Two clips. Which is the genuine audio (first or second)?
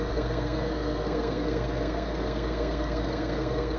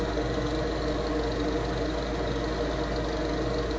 second